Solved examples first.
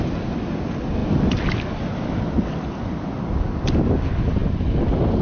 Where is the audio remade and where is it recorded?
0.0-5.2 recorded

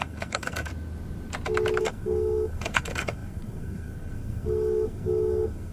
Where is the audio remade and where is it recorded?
0.0-0.7 remade; 0.7-1.8 recorded; 1.8-5.7 remade

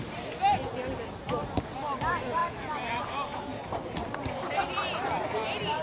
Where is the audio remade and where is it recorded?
0.0-5.8 recorded

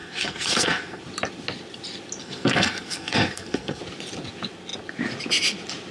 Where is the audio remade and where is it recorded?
0.0-1.0 remade; 1.0-2.2 recorded; 2.2-3.8 remade; 3.8-5.9 recorded

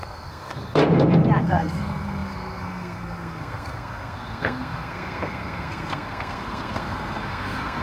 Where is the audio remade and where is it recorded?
0.0-0.8 remade; 0.8-1.4 recorded; 1.4-7.8 remade

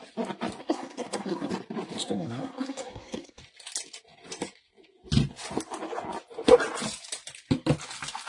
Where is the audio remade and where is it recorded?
0.0-0.6 recorded; 0.6-1.5 remade; 1.5-2.0 recorded; 2.0-3.4 remade; 3.4-8.3 recorded

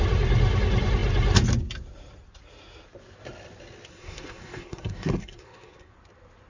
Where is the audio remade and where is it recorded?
0.0-3.9 recorded; 3.9-5.9 remade; 5.9-6.5 recorded

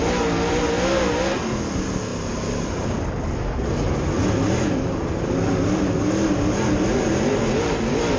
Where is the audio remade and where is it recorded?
0.0-8.2 recorded